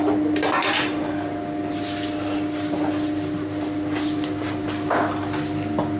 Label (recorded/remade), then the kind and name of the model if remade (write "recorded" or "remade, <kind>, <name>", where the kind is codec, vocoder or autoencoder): recorded